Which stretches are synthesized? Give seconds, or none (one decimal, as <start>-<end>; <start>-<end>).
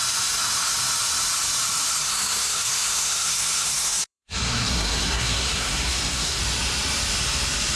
2.0-6.4